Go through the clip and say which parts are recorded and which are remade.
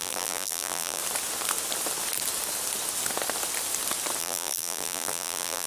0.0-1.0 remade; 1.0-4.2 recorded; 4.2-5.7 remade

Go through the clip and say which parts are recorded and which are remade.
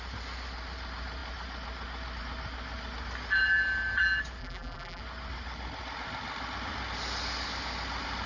0.0-4.4 recorded; 4.4-5.0 remade; 5.0-8.3 recorded